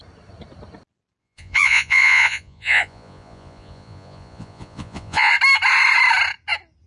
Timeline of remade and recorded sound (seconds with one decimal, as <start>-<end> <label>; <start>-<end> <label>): 0.0-1.2 recorded; 1.2-5.3 remade; 5.3-6.9 recorded